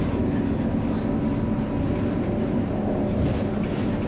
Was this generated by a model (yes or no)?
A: no